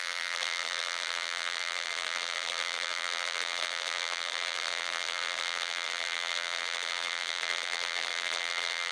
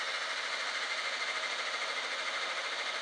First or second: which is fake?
first